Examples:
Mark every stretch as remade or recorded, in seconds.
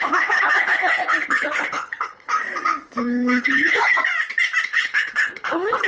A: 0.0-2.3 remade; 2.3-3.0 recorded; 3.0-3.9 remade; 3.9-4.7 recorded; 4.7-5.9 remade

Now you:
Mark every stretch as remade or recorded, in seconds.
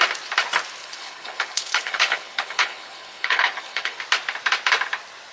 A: 0.0-0.8 recorded; 0.8-4.0 remade; 4.0-5.3 recorded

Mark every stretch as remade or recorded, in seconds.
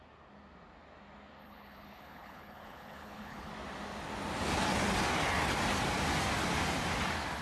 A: 0.0-1.4 recorded; 1.4-3.5 remade; 3.5-7.4 recorded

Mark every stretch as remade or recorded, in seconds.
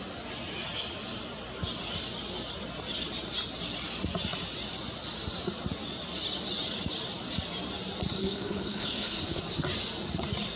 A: 0.0-8.2 recorded; 8.2-9.4 remade; 9.4-10.6 recorded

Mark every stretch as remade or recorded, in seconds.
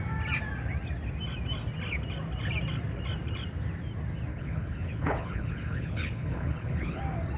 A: 0.0-4.3 recorded; 4.3-7.0 remade; 7.0-7.4 recorded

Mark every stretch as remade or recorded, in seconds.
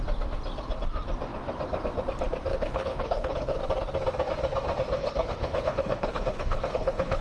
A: 0.0-2.5 recorded; 2.5-3.6 remade; 3.6-5.0 recorded; 5.0-7.2 remade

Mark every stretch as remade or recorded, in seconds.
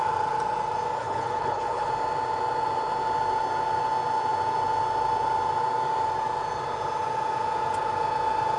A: 0.0-1.0 recorded; 1.0-1.9 remade; 1.9-8.6 recorded